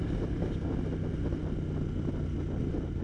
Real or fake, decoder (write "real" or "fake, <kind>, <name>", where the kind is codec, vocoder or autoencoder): real